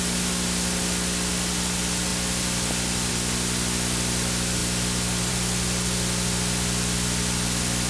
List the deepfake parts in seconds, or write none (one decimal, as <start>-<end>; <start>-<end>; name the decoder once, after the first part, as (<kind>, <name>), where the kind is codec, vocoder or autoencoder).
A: none